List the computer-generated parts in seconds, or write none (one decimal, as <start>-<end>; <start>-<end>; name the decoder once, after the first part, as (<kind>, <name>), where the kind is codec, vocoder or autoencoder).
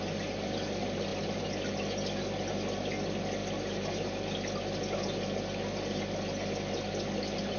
none